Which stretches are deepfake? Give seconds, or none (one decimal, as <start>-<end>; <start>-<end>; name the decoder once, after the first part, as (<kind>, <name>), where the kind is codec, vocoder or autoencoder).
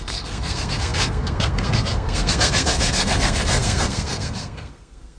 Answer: 0.0-5.2 (codec, SNAC)